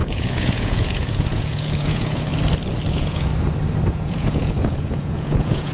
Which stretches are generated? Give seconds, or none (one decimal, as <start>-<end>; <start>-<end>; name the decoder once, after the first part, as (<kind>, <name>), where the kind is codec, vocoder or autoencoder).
0.0-2.3 (vocoder, Vocos); 2.9-3.3; 3.9-5.7